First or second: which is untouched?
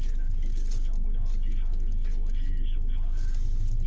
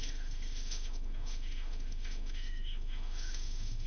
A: first